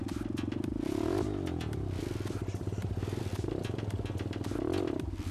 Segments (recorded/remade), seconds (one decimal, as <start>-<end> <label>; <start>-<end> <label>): 0.0-3.2 remade; 3.2-5.3 recorded